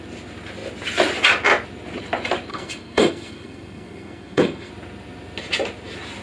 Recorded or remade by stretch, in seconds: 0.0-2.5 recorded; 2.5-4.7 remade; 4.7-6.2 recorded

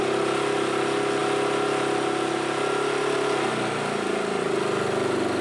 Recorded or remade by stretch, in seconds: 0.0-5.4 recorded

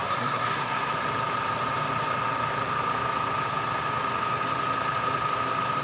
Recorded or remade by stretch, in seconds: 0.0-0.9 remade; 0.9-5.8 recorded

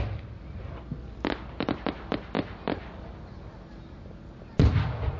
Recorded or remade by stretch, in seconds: 0.0-5.2 recorded

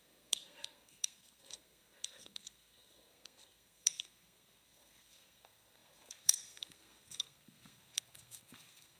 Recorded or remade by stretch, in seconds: 0.0-9.0 remade